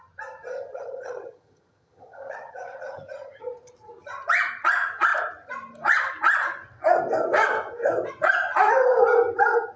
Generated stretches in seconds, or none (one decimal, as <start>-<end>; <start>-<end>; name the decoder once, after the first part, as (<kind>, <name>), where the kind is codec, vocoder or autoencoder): 0.5-3.4 (vocoder, HiFi-GAN)